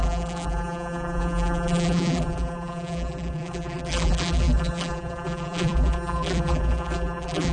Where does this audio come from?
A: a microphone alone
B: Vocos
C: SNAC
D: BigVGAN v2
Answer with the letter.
D